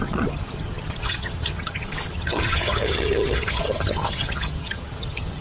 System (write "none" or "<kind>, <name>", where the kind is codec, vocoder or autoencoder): vocoder, HiFi-GAN